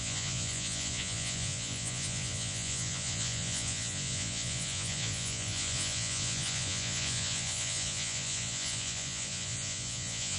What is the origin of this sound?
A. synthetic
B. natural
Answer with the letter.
A